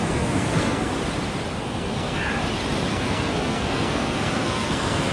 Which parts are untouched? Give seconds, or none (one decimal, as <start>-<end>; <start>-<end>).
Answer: 0.9-1.6; 2.3-2.9